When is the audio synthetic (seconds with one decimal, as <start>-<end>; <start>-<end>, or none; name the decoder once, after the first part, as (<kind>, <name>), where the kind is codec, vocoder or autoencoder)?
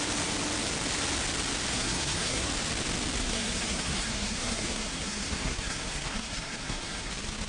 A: 1.7-2.5 (codec, SNAC); 3.2-7.1